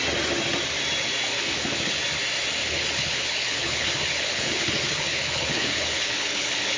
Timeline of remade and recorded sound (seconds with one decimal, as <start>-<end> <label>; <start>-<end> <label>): 0.0-1.3 recorded; 1.3-2.0 remade; 2.0-2.6 recorded; 2.6-6.8 remade